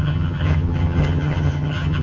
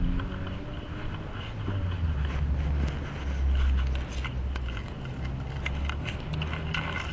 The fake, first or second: first